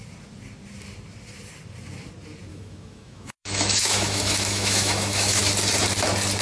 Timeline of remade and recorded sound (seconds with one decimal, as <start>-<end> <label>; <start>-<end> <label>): 0.0-2.5 recorded; 2.5-5.4 remade; 5.4-6.4 recorded

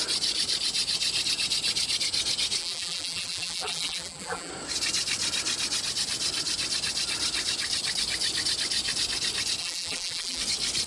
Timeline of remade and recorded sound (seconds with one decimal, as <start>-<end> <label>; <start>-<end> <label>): 0.0-2.6 recorded; 2.6-4.5 remade; 4.5-9.6 recorded; 9.6-10.4 remade; 10.4-10.9 recorded

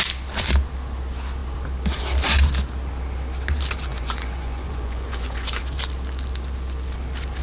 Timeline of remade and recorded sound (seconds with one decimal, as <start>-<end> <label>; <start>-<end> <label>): 0.0-3.9 recorded; 3.9-5.6 remade; 5.6-7.4 recorded

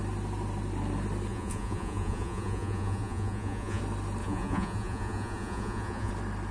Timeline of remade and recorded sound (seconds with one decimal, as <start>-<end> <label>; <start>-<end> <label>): 0.0-1.3 recorded; 1.3-3.8 remade; 3.8-4.2 recorded; 4.2-6.1 remade; 6.1-6.5 recorded